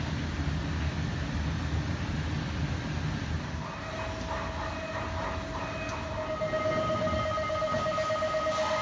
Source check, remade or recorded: recorded